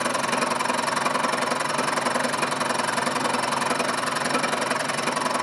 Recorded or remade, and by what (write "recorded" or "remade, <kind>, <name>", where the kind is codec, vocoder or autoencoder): recorded